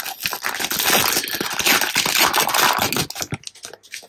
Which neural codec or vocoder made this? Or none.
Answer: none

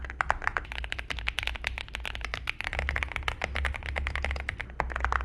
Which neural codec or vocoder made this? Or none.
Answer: none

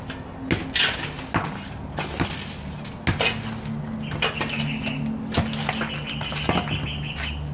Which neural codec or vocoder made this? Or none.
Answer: none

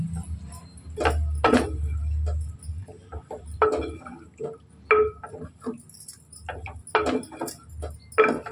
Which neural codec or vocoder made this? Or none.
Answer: none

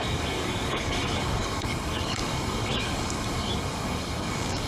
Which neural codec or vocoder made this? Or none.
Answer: codec, DAC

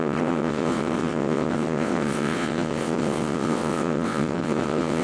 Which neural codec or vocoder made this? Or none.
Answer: vocoder, WaveNeXt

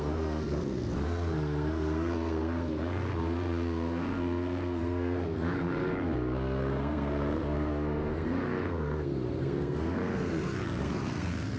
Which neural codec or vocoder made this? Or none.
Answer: codec, SNAC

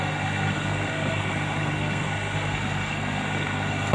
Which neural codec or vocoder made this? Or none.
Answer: codec, SNAC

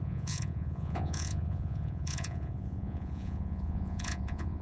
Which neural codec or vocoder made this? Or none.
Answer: vocoder, Vocos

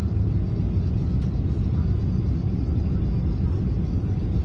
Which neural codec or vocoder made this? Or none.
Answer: none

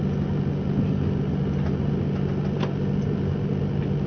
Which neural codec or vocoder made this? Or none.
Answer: none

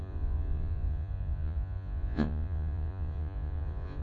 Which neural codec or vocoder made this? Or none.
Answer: vocoder, Vocos